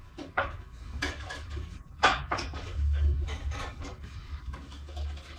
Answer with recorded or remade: remade